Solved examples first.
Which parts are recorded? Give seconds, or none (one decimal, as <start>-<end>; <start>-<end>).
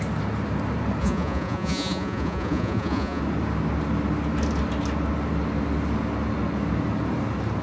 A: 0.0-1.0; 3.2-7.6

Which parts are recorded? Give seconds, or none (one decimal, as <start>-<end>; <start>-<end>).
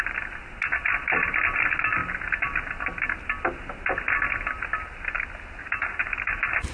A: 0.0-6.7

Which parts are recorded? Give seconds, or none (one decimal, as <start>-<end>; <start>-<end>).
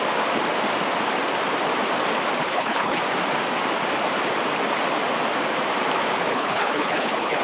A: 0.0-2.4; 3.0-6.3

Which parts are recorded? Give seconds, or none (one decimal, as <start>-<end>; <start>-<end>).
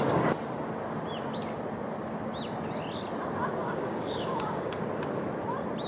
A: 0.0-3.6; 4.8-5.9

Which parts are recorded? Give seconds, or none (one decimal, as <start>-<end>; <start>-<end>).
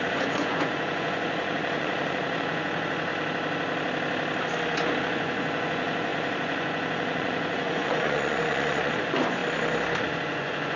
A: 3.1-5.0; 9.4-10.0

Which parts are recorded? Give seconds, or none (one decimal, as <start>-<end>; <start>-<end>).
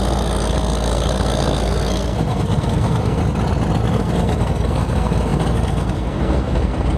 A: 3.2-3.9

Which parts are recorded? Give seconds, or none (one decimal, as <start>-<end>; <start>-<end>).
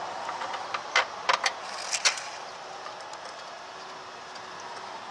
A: 0.0-5.1